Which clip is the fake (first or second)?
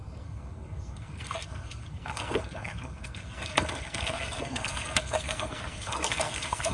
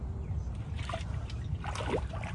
first